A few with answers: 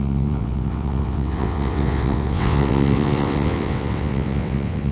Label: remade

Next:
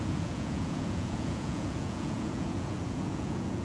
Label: remade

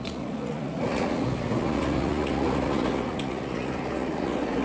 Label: remade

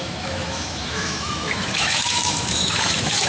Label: remade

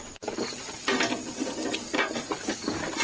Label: recorded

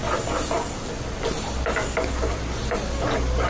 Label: recorded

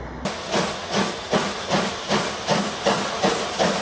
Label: recorded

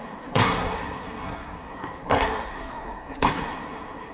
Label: remade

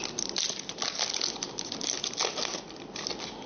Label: recorded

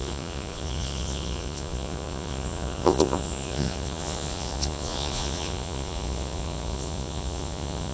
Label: remade